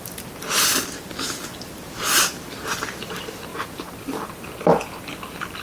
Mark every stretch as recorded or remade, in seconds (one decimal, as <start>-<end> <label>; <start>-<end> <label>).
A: 0.0-5.6 remade